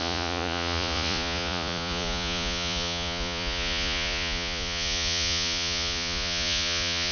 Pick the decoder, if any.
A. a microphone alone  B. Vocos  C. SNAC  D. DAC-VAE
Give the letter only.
B